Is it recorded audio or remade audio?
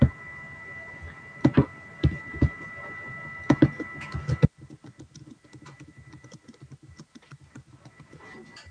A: recorded